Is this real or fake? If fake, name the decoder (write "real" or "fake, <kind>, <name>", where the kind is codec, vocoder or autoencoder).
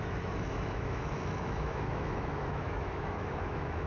fake, autoencoder, DAC-VAE